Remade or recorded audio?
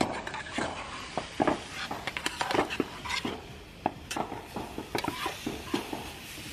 recorded